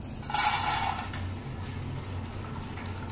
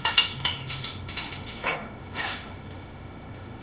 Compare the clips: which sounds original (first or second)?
first